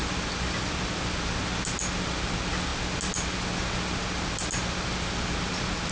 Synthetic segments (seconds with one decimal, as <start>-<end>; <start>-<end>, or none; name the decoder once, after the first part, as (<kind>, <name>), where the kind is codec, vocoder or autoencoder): none